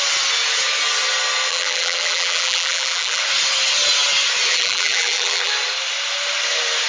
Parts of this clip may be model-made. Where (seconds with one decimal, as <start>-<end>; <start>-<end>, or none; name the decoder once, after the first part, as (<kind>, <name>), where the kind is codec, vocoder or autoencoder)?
1.5-3.2 (vocoder, BigVGAN v2); 4.5-5.5